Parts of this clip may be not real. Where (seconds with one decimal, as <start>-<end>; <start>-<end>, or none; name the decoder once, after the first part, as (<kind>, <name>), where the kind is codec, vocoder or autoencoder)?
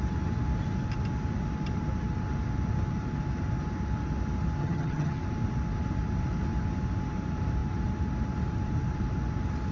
4.6-5.2 (vocoder, HiFi-GAN)